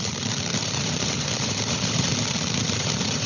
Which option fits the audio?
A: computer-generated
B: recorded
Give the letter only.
A